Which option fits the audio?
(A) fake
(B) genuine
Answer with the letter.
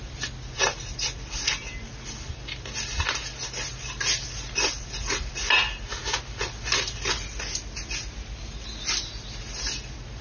B